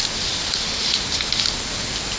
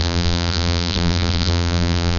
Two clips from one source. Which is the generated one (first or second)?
second